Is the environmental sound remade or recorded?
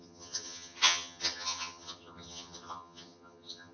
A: remade